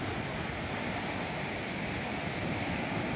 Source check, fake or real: real